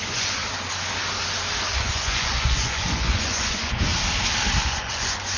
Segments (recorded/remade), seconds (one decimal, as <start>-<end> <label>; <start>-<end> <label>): 0.0-0.4 remade; 0.4-1.7 recorded; 1.7-3.9 remade; 3.9-4.6 recorded; 4.6-5.4 remade